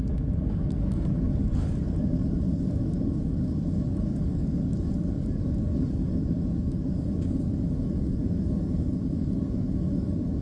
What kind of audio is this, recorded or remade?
remade